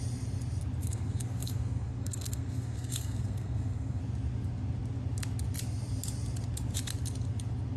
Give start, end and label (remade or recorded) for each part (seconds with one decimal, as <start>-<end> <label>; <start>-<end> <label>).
0.0-0.8 recorded; 0.8-4.0 remade; 4.0-7.8 recorded